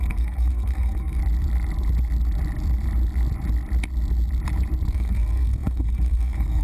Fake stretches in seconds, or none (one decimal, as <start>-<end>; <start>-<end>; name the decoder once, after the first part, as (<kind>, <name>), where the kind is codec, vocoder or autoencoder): 0.0-1.2 (codec, SNAC); 4.9-6.6